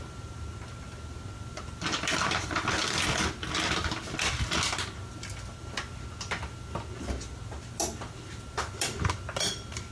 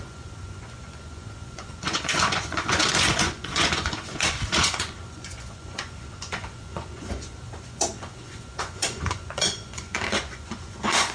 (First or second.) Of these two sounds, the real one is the first